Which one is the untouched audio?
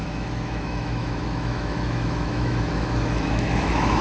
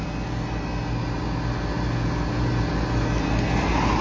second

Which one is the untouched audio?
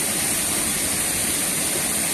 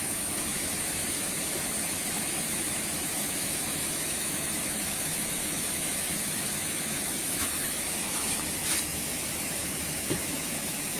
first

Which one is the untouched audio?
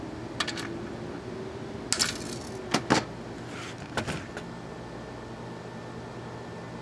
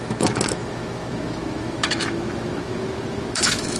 first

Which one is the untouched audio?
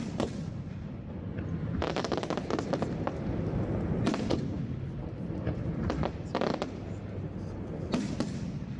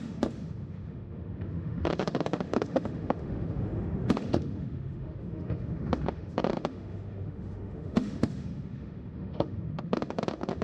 first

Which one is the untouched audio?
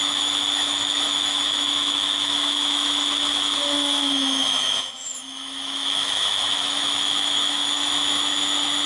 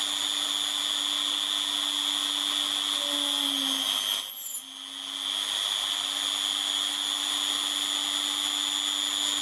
second